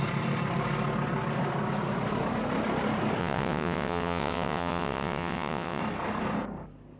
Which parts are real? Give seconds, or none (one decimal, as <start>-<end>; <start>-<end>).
0.0-3.2; 5.8-7.0